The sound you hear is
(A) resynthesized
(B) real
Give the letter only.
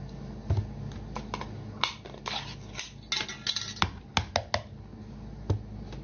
B